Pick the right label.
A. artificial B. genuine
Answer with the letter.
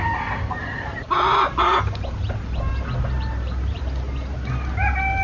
B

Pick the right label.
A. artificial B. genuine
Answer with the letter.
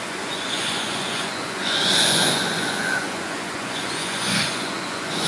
A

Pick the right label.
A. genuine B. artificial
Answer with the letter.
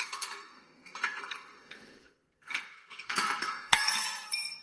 B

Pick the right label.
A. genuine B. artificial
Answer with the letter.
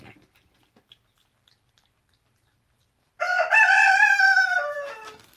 B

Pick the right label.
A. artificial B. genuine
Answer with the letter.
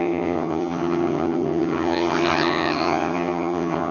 A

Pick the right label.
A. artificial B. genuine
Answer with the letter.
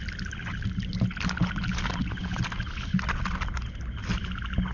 B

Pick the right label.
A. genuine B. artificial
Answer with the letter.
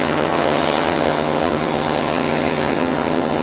B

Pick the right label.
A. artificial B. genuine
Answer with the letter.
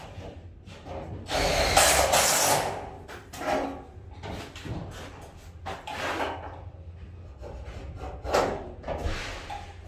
B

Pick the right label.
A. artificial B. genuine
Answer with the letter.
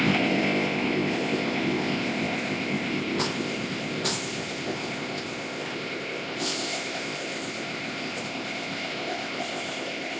A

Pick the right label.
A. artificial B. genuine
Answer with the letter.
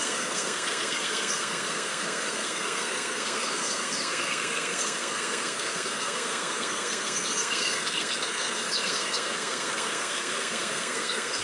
A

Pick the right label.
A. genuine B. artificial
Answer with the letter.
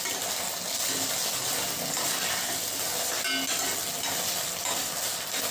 A